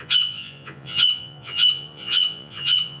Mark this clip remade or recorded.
remade